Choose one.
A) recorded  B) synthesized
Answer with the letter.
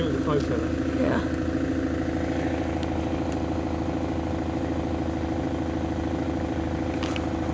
A